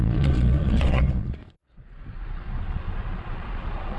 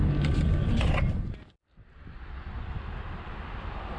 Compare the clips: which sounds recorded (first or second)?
second